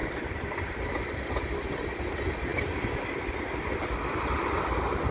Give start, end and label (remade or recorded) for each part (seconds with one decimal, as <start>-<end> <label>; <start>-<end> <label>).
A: 0.0-0.6 remade; 0.6-2.5 recorded; 2.5-5.1 remade